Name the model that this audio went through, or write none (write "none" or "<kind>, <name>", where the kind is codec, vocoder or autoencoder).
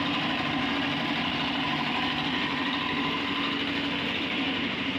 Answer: none